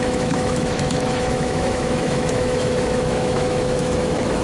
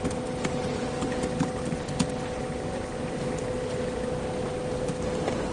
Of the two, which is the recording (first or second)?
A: second